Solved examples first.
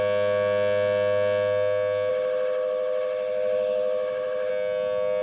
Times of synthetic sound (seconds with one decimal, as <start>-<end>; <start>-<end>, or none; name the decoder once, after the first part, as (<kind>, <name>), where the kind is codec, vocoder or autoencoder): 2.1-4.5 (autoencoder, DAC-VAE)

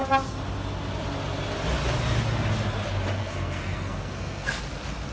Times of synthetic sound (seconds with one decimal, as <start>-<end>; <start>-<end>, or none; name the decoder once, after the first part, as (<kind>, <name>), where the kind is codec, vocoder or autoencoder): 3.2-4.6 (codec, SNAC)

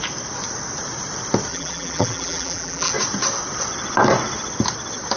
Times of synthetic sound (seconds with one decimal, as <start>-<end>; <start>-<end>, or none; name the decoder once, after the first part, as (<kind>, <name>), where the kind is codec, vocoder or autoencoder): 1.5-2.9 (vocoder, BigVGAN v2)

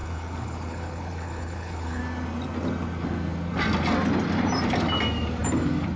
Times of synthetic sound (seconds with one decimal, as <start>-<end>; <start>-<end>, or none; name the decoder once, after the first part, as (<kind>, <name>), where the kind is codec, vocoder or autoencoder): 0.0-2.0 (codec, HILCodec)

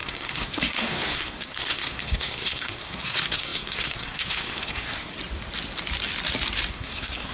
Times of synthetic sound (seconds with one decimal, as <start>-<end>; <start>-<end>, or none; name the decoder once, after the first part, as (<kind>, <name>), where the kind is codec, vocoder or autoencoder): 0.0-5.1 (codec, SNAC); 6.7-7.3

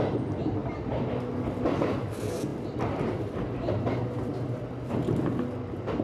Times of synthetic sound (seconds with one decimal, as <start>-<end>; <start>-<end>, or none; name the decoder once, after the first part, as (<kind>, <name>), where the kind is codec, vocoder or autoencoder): none

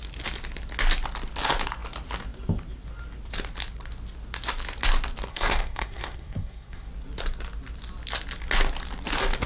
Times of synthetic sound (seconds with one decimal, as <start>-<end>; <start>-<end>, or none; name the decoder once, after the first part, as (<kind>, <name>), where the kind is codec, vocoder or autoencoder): 5.3-6.9 (codec, SNAC)

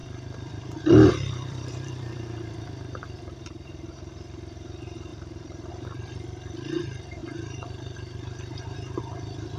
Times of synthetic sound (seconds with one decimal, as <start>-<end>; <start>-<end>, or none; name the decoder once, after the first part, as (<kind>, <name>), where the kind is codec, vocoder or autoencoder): 0.0-2.4 (vocoder, BigVGAN v2); 5.1-5.7